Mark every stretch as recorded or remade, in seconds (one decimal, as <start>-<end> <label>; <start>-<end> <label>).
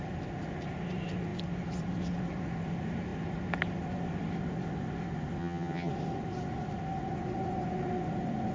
0.0-5.4 recorded; 5.4-5.9 remade; 5.9-8.5 recorded